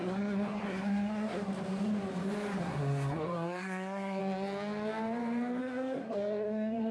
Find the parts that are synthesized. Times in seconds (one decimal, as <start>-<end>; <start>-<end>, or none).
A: 0.0-1.5; 2.6-4.2; 5.6-6.9